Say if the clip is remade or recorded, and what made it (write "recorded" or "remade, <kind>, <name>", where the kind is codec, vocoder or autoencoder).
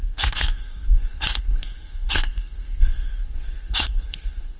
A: remade, codec, SNAC